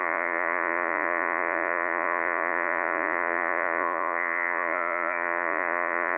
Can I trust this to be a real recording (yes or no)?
no